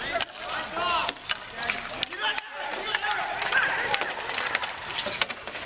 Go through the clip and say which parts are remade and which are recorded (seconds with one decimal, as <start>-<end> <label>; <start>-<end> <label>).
0.0-5.7 recorded

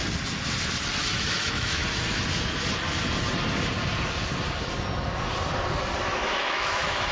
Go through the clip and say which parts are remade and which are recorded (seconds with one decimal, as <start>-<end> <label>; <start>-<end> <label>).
0.0-1.0 recorded; 1.0-1.8 remade; 1.8-6.1 recorded; 6.1-7.1 remade